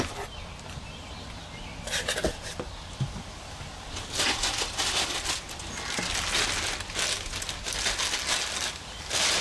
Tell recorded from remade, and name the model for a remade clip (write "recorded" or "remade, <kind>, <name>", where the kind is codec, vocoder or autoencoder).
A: recorded